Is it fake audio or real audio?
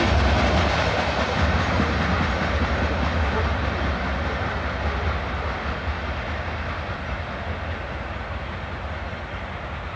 real